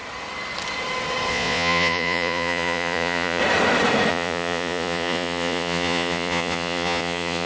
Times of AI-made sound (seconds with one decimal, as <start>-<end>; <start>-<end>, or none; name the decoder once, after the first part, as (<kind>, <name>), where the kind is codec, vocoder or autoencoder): 1.3-3.4 (vocoder, Vocos); 4.1-7.5